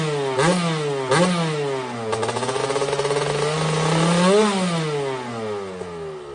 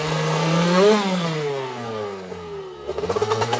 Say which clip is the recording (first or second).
first